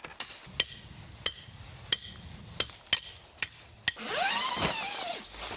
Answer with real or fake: real